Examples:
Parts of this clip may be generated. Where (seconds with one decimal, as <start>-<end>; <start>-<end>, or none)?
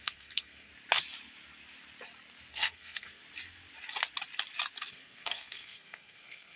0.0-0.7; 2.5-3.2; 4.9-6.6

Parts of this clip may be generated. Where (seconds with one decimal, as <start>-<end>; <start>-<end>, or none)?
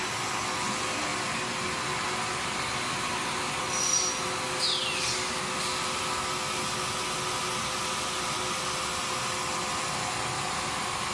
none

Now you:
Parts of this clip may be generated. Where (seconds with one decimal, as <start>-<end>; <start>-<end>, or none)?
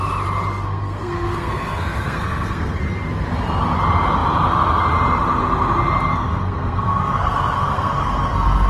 0.5-2.8; 6.3-8.7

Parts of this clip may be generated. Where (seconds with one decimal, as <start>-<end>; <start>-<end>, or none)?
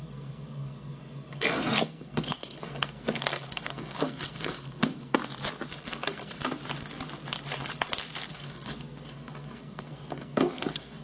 0.0-5.2; 5.7-6.4; 8.3-11.0